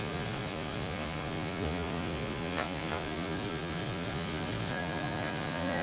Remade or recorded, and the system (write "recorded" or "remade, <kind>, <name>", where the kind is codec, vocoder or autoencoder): remade, vocoder, Vocos